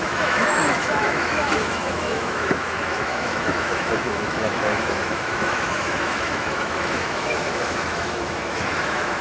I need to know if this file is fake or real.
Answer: fake